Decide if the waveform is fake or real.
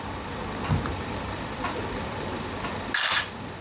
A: real